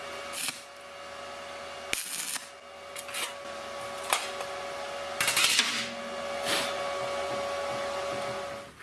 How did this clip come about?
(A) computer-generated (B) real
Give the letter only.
B